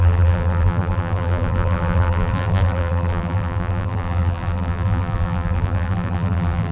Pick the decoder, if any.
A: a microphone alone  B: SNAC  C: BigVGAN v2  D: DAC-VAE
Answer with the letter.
C